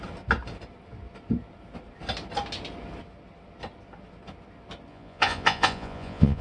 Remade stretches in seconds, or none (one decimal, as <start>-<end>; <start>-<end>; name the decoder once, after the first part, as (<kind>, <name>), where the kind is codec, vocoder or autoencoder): 4.9-6.4 (vocoder, Vocos)